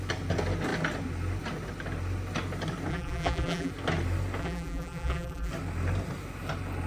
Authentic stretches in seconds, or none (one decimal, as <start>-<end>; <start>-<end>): 0.0-2.9; 3.7-4.4; 5.5-6.9